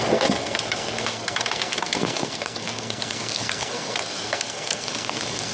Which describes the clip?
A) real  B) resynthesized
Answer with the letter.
B